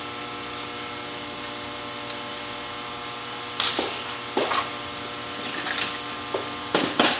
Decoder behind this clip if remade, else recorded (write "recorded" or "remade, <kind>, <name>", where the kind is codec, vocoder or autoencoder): recorded